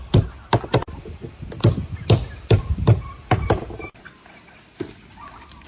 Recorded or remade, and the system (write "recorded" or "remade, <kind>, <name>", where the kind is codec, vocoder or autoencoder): recorded